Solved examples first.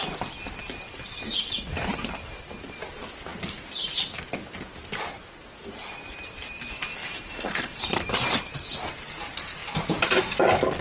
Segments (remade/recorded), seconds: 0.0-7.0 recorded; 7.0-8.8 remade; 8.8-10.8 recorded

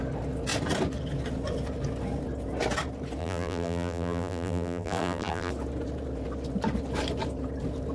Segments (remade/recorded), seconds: 0.0-3.2 recorded; 3.2-5.5 remade; 5.5-7.9 recorded

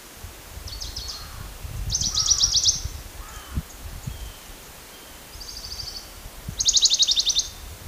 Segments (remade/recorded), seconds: 0.0-7.9 recorded

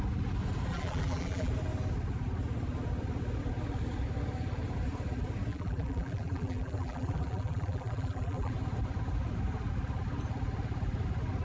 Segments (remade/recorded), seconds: 0.0-0.7 recorded; 0.7-1.5 remade; 1.5-5.5 recorded; 5.5-8.5 remade; 8.5-11.4 recorded